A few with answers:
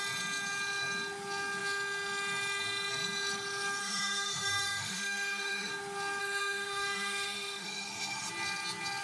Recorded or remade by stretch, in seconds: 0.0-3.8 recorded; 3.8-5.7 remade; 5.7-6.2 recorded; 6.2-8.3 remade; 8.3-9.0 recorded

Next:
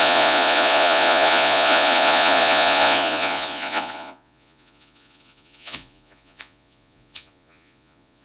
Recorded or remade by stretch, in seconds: 0.0-8.2 remade

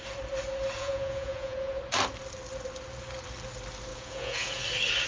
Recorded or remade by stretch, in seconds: 0.0-0.8 recorded; 0.8-1.8 remade; 1.8-3.9 recorded; 3.9-4.6 remade; 4.6-5.1 recorded

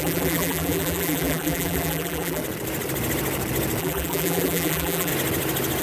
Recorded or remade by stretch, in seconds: 0.0-2.4 remade; 2.4-3.8 recorded; 3.8-5.1 remade; 5.1-5.8 recorded

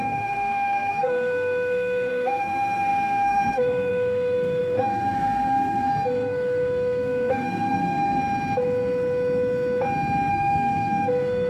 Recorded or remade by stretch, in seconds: 0.0-8.2 remade; 8.2-10.3 recorded; 10.3-11.5 remade

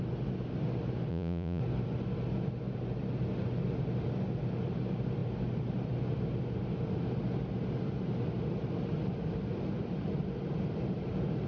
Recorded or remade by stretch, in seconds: 0.0-1.1 recorded; 1.1-1.6 remade; 1.6-11.5 recorded

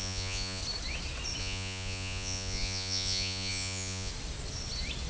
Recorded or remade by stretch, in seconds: 0.0-0.6 remade; 0.6-1.4 recorded; 1.4-4.1 remade; 4.1-5.1 recorded

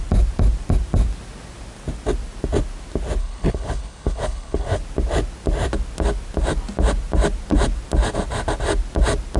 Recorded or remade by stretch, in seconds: 0.0-3.2 recorded; 3.2-4.8 remade; 4.8-9.4 recorded